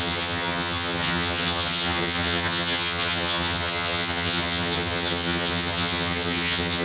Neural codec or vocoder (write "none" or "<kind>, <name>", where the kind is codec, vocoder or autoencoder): vocoder, HiFi-GAN